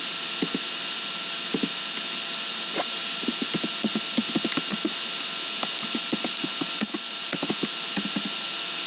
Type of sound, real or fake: real